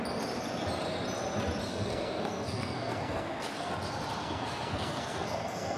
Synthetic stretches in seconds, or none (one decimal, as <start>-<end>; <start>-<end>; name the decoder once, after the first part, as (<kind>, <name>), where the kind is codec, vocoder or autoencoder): 1.7-3.7 (codec, SNAC); 4.2-5.8